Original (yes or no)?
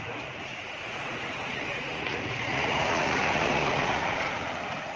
no